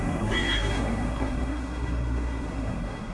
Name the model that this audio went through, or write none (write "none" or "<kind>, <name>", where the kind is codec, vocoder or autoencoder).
codec, SNAC